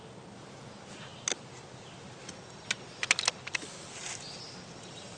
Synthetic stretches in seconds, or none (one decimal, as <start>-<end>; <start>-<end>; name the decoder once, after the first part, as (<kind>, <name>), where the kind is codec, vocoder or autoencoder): none